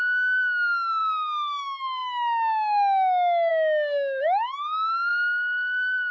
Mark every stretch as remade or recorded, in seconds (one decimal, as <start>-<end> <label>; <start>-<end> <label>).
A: 0.0-1.0 recorded; 1.0-1.6 remade; 1.6-5.1 recorded; 5.1-6.1 remade